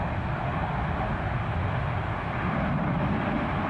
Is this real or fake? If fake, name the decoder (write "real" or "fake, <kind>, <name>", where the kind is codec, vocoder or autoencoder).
real